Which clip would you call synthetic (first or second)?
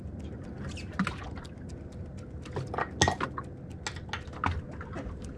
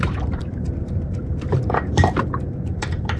second